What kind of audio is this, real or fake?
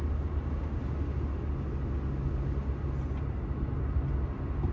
real